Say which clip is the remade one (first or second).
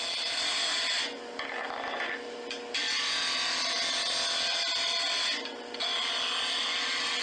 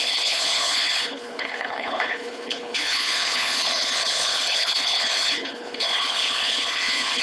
second